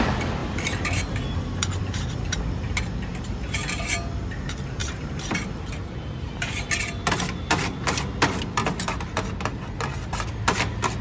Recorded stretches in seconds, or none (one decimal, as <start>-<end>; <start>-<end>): 0.0-0.4; 2.4-4.8; 6.7-11.0